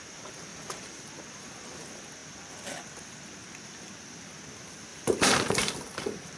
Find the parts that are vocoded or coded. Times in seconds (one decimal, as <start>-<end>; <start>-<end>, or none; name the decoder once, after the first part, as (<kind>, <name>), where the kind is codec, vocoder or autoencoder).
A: 0.5-1.1 (vocoder, BigVGAN v2); 4.9-6.4